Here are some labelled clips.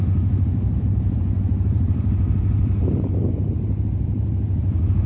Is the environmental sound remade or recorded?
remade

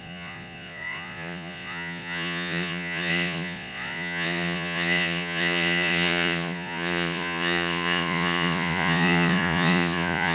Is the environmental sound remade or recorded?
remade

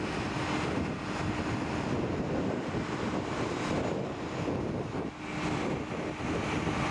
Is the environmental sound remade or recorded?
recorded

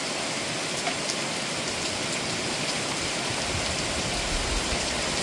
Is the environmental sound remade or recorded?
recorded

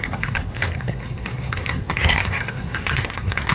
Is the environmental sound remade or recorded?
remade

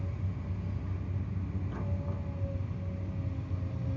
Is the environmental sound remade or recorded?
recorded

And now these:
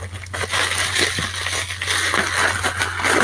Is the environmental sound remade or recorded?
recorded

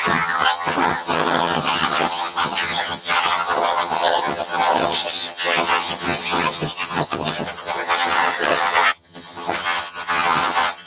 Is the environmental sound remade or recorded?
remade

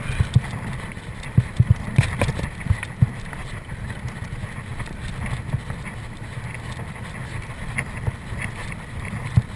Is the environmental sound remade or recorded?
recorded